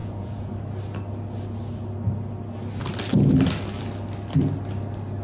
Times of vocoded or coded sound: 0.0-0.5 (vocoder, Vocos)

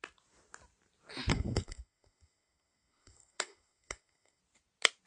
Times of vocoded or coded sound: 1.3-4.4 (codec, SNAC)

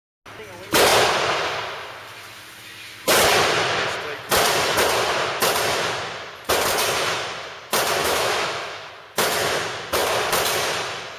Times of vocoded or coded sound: 8.0-8.9 (autoencoder, DAC-VAE)

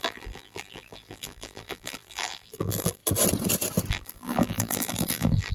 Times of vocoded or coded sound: 0.0-3.0 (vocoder, BigVGAN v2); 3.9-5.5

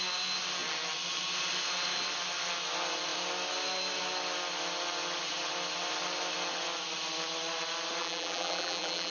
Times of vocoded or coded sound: 8.0-9.1 (vocoder, BigVGAN v2)